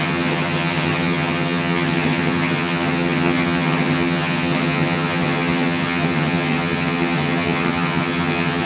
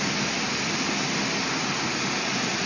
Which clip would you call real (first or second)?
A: second